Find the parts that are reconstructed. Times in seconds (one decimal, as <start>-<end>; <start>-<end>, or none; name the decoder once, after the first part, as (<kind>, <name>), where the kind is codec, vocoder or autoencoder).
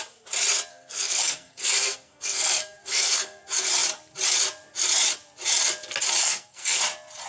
0.7-3.4 (codec, SNAC); 6.2-6.8